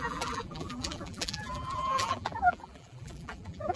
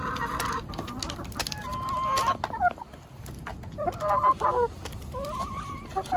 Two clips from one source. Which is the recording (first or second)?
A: second